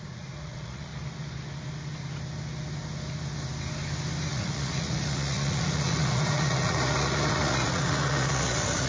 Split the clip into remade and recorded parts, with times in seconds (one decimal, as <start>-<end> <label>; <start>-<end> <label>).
0.0-0.9 remade; 0.9-4.3 recorded; 4.3-8.9 remade